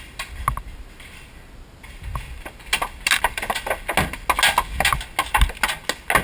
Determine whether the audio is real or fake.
real